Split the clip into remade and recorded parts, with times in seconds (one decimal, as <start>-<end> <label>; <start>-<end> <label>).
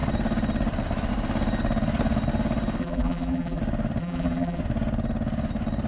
0.0-2.8 recorded; 2.8-3.6 remade; 3.6-4.0 recorded; 4.0-4.6 remade; 4.6-5.9 recorded